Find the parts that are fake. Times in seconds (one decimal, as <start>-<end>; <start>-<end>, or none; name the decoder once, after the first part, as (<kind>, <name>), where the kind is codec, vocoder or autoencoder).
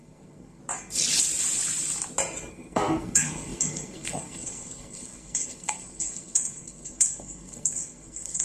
0.0-0.6 (codec, SNAC); 2.5-8.4